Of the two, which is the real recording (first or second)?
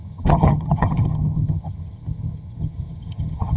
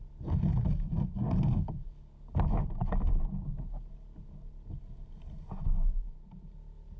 second